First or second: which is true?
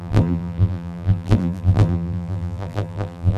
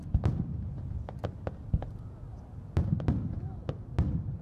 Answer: second